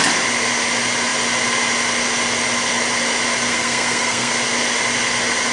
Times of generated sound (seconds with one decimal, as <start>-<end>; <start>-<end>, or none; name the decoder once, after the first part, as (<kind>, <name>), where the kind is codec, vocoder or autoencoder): 3.5-4.3 (codec, SNAC)